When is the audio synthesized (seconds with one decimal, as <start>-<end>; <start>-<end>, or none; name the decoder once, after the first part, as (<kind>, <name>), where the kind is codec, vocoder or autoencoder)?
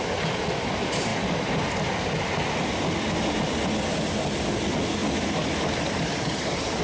5.0-6.8 (vocoder, BigVGAN v2)